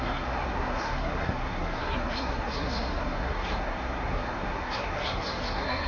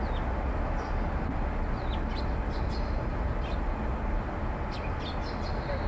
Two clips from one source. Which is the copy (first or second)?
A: first